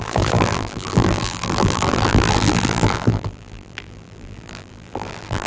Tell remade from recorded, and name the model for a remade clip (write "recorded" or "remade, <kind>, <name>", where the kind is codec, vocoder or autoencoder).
remade, vocoder, BigVGAN v2